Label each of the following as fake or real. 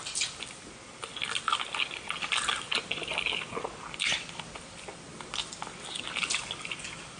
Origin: real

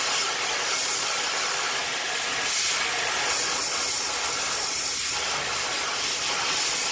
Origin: real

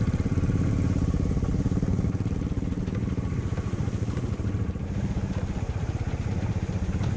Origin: real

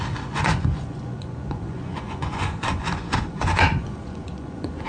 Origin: fake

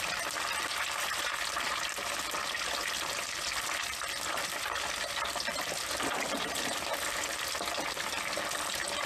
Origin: real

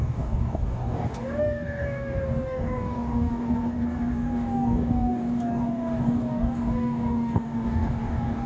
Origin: fake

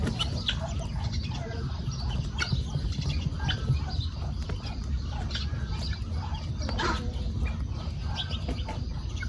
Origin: real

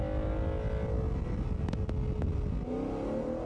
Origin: real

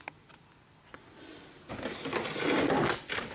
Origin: real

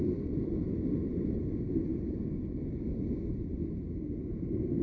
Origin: real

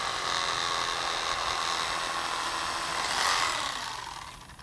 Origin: real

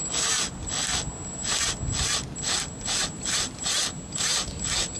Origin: real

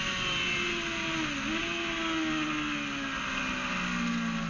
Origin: real